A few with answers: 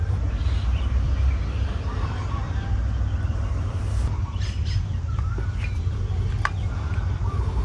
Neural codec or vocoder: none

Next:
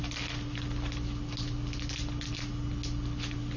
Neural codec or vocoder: none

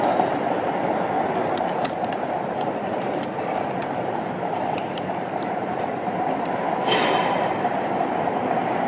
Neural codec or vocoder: none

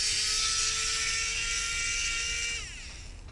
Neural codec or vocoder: none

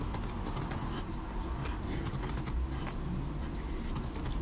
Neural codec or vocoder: none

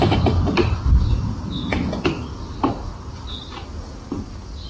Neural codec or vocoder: none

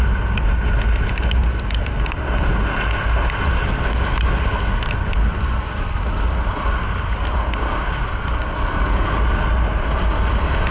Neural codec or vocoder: none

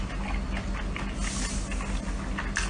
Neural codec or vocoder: none